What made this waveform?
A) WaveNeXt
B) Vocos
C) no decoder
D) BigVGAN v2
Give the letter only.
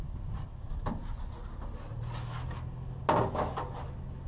C